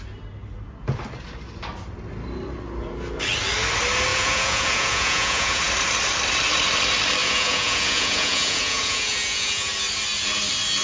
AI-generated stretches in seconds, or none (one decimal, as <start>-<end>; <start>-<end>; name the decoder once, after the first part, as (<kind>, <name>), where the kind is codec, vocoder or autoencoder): 4.1-5.6 (vocoder, Vocos); 7.2-9.7